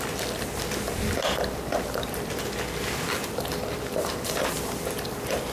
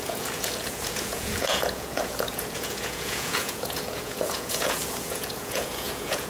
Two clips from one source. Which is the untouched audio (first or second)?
first